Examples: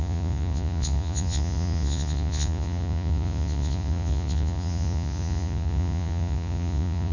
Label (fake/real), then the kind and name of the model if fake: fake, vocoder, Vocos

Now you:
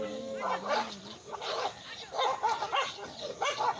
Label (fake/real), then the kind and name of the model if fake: real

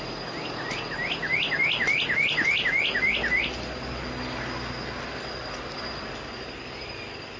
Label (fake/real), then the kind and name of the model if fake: real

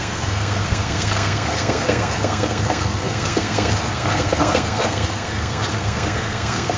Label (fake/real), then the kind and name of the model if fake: fake, codec, SNAC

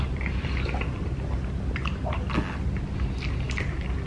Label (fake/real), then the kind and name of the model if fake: real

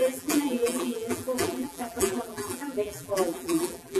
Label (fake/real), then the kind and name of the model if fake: fake, vocoder, BigVGAN v2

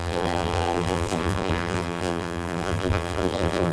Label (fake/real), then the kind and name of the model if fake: fake, vocoder, BigVGAN v2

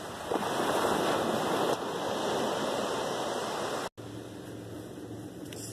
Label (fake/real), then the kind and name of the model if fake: real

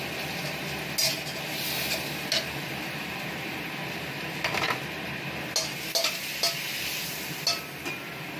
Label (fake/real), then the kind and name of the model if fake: real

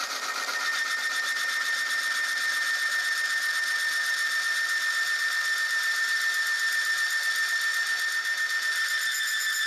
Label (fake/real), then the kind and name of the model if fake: real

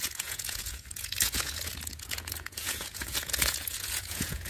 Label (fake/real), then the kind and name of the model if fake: fake, vocoder, Vocos